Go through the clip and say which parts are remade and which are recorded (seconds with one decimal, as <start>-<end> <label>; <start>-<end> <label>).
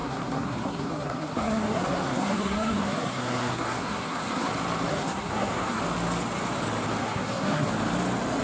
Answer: 0.0-4.5 remade; 4.5-4.9 recorded; 4.9-5.8 remade; 5.8-7.0 recorded; 7.0-7.7 remade; 7.7-8.4 recorded